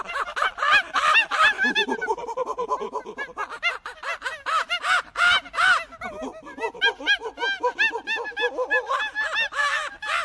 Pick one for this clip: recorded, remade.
recorded